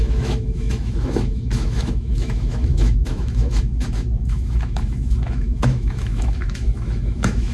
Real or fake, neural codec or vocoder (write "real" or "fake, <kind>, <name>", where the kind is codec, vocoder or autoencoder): fake, autoencoder, DAC-VAE